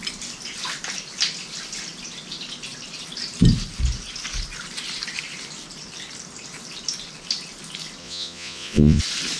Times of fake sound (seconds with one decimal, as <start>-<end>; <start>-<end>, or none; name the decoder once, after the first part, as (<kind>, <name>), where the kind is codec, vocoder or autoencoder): 8.0-9.0 (vocoder, Vocos)